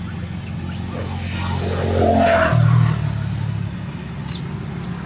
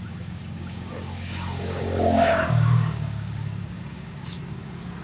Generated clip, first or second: second